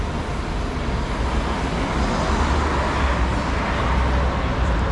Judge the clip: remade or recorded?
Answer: recorded